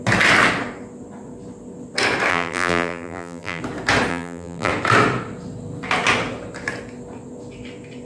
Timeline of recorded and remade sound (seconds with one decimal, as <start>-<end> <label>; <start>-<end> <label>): 0.0-2.3 recorded; 2.3-3.6 remade; 3.6-4.1 recorded; 4.1-4.7 remade; 4.7-8.0 recorded